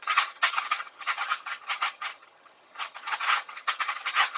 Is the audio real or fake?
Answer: fake